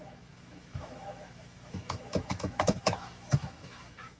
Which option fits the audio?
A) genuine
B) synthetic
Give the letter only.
B